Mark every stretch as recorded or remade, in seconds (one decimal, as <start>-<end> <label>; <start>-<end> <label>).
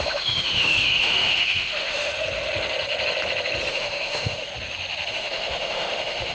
0.0-2.1 remade; 2.1-3.7 recorded; 3.7-4.5 remade; 4.5-5.1 recorded; 5.1-6.3 remade